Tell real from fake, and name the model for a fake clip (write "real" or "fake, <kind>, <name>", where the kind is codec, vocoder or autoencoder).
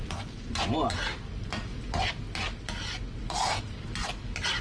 real